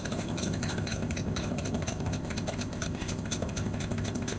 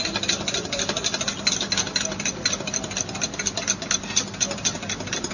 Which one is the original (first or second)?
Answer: second